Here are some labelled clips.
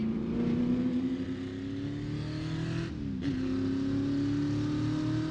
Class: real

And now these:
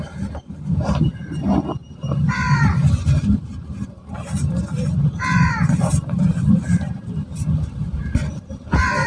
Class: fake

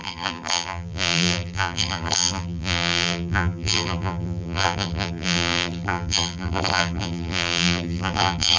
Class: fake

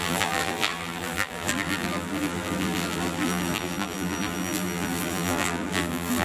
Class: fake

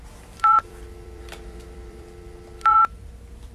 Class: fake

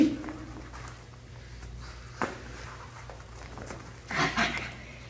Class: real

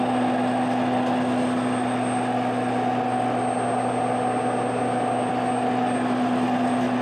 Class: real